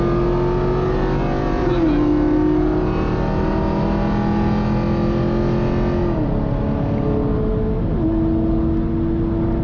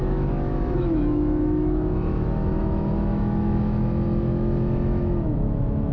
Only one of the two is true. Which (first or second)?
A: first